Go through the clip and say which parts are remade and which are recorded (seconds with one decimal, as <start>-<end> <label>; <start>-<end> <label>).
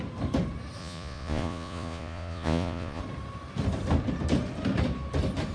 0.0-0.8 recorded; 0.8-3.0 remade; 3.0-5.5 recorded